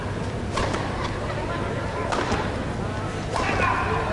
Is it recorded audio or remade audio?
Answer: recorded